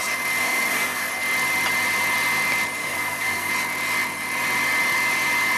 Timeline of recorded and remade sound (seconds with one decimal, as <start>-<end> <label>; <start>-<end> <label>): 0.0-0.4 recorded; 0.4-1.1 remade; 1.1-2.8 recorded; 2.8-3.5 remade; 3.5-5.6 recorded